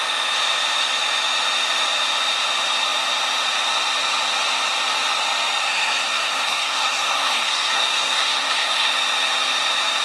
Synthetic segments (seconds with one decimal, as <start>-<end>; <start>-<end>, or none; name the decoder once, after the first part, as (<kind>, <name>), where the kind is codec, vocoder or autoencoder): 5.6-8.9 (codec, SNAC)